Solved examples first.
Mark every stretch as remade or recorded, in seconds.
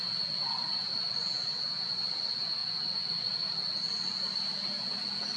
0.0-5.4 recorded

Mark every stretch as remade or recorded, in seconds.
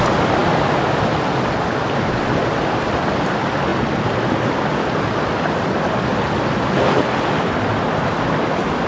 0.0-8.9 recorded